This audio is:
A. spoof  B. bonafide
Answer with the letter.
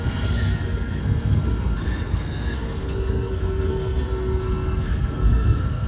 A